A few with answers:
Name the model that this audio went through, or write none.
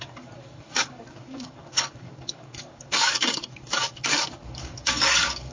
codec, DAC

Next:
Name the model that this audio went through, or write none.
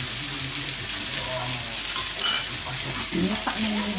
none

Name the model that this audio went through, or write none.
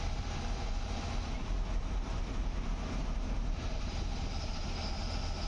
none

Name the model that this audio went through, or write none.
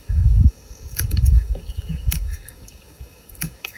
codec, DAC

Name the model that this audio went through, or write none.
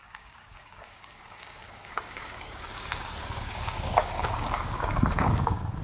codec, DAC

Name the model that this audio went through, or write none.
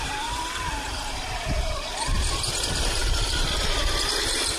none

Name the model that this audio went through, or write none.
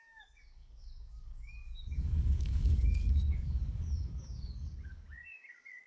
codec, DAC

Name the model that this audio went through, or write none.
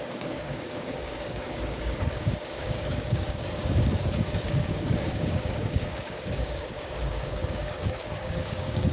codec, DAC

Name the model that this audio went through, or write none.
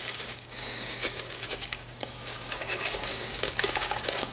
codec, DAC